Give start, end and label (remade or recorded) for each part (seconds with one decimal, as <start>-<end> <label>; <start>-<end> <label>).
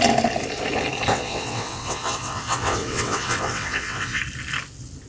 0.0-1.1 recorded; 1.1-4.2 remade; 4.2-5.1 recorded